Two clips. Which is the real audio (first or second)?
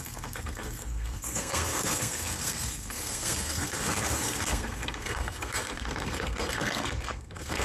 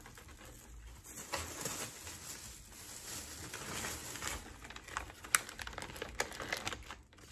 second